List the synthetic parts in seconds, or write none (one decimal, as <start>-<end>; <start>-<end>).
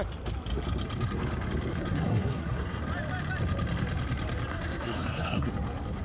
1.7-2.8; 4.5-5.5